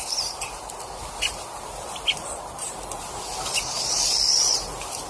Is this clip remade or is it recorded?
recorded